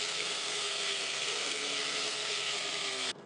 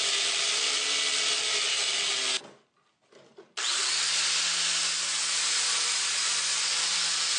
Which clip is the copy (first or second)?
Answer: first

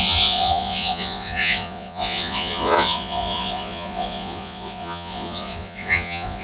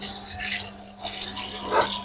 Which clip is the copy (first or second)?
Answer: first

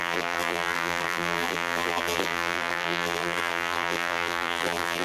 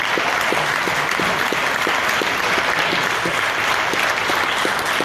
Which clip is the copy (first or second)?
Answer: first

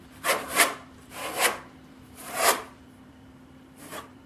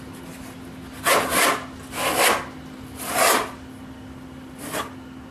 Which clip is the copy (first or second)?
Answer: first